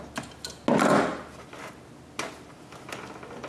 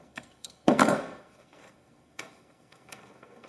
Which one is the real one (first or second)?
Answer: first